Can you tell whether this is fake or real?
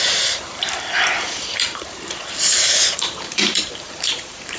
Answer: fake